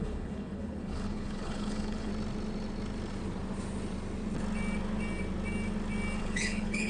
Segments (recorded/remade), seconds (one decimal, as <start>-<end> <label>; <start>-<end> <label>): 0.0-2.1 remade; 2.1-6.2 recorded; 6.2-6.9 remade